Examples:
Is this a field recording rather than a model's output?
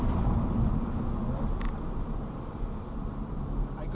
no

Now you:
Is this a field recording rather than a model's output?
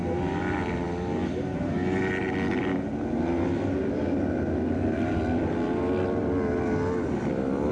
yes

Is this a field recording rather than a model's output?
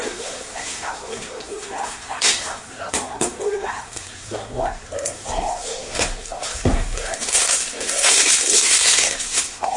no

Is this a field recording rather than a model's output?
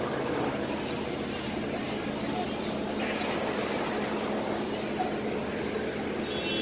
yes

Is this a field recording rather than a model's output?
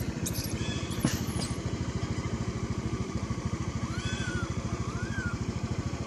no